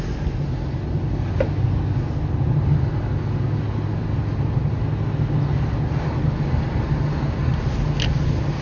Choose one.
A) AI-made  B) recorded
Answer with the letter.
B